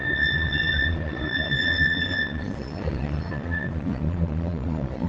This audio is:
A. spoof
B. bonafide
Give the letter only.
A